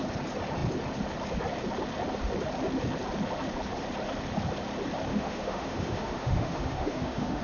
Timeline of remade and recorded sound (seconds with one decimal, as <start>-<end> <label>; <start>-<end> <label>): 0.0-5.1 recorded; 5.1-7.4 remade